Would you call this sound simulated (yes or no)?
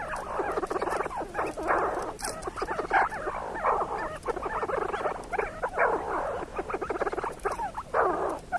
no